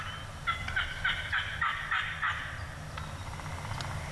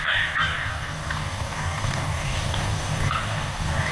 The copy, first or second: second